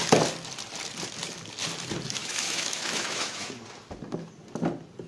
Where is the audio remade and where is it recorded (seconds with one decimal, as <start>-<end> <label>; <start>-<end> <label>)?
0.0-2.2 recorded; 2.2-3.5 remade; 3.5-5.1 recorded